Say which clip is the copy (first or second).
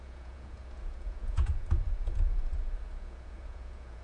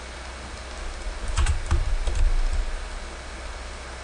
first